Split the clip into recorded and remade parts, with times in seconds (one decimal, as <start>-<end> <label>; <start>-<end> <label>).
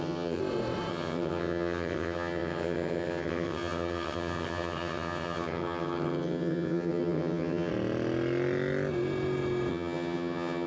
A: 0.0-0.4 remade; 0.4-0.9 recorded; 0.9-7.7 remade; 7.7-9.7 recorded; 9.7-10.7 remade